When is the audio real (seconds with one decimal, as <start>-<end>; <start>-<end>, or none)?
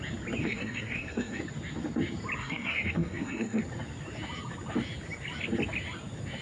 0.0-0.4; 1.4-2.4; 3.6-6.4